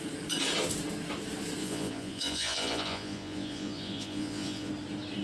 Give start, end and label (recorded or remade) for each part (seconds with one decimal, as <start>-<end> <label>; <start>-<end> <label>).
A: 0.0-1.6 recorded; 1.6-4.7 remade; 4.7-5.2 recorded